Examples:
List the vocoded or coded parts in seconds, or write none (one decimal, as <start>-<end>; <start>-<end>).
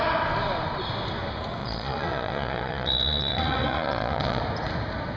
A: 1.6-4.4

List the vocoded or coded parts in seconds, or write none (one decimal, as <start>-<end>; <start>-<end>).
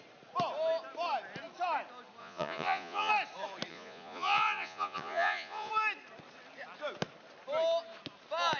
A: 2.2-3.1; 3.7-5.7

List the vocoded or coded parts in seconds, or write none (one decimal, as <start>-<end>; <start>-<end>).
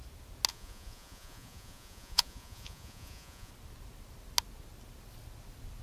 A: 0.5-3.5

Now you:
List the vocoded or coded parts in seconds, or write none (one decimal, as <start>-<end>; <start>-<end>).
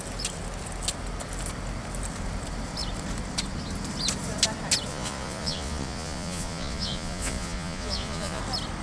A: 4.9-8.4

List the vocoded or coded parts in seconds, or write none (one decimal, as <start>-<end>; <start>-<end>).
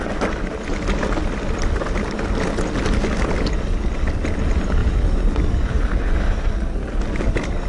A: none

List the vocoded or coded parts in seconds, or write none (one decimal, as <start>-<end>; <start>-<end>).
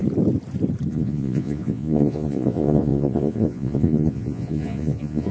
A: 0.9-5.3